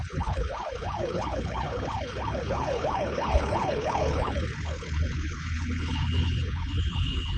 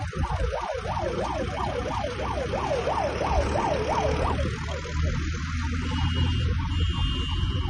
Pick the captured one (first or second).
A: second